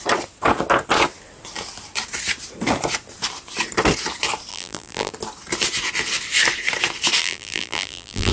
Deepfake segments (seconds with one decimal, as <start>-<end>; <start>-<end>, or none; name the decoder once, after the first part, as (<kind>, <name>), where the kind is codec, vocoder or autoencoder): 4.5-5.1 (vocoder, BigVGAN v2); 7.2-8.3